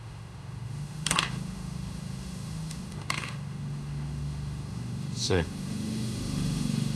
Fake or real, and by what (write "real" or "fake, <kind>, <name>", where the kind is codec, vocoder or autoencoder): fake, autoencoder, DAC-VAE